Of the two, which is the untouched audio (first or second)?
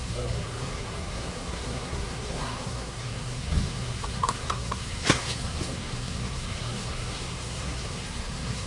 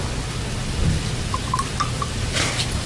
second